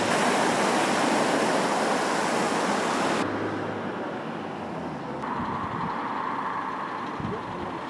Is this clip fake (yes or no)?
no